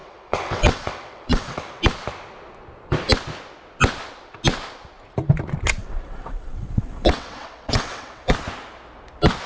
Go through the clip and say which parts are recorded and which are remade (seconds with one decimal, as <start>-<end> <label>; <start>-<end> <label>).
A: 0.0-1.8 remade; 1.8-5.8 recorded; 5.8-8.3 remade; 8.3-9.5 recorded